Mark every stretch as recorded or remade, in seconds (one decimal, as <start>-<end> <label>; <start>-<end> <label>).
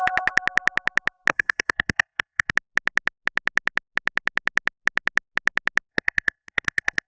0.0-1.3 recorded; 1.3-2.5 remade; 2.5-5.9 recorded; 5.9-7.1 remade